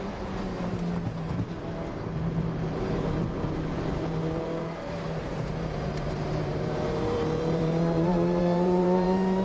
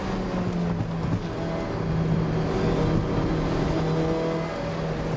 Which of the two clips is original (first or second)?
second